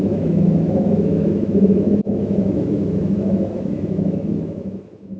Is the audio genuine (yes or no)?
no